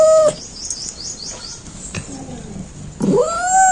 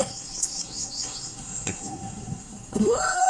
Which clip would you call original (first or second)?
first